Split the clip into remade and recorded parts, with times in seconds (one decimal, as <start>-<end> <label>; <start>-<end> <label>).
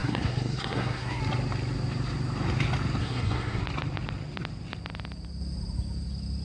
0.0-1.2 remade; 1.2-3.0 recorded; 3.0-3.6 remade; 3.6-6.4 recorded